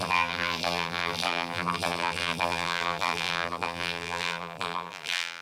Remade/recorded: remade